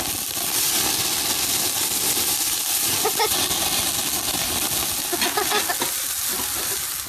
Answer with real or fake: real